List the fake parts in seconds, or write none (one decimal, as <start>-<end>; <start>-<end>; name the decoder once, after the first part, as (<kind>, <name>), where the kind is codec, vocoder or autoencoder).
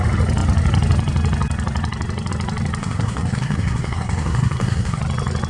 2.8-5.0 (codec, SNAC)